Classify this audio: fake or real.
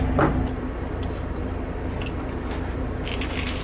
real